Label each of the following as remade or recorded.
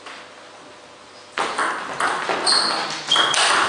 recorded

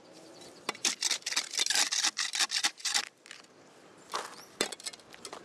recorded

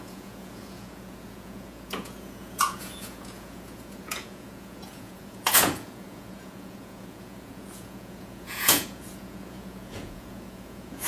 remade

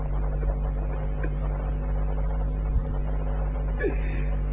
remade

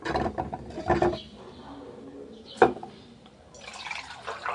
recorded